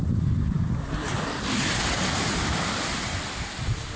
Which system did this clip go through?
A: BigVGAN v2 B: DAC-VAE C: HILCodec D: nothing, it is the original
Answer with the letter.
D